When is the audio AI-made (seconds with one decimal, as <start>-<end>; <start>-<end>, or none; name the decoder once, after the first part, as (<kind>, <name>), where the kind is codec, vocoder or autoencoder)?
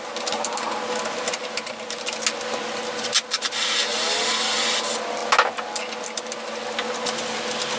none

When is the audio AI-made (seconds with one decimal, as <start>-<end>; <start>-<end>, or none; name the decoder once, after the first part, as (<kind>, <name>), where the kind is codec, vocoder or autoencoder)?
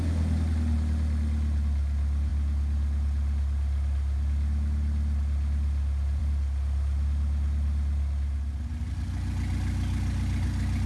none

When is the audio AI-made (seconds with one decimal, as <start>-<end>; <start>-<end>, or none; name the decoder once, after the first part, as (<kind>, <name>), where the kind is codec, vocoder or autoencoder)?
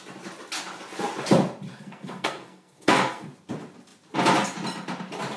1.7-3.3 (codec, SNAC)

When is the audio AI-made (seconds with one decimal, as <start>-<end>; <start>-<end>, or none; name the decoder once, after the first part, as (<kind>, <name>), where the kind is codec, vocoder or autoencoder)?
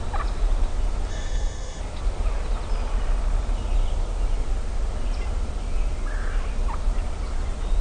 1.1-1.8 (codec, SNAC)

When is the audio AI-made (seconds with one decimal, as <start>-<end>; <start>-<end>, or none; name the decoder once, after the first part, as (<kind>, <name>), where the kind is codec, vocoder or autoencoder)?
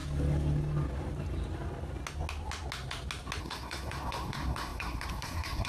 3.4-5.7 (codec, SNAC)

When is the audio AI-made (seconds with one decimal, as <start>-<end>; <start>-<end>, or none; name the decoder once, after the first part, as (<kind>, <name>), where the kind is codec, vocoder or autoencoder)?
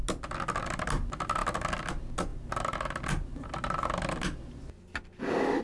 none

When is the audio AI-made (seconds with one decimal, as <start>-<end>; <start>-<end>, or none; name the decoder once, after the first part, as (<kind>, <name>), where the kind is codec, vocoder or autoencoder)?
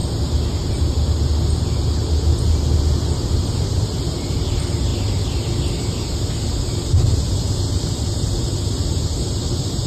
none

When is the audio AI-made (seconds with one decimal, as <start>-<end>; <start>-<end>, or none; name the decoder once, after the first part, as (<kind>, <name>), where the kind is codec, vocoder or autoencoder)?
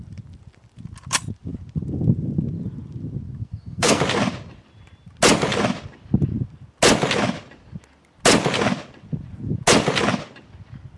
3.4-4.0 (codec, SNAC)